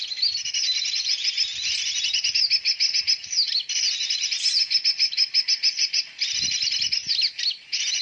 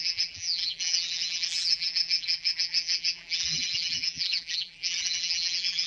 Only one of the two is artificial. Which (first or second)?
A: second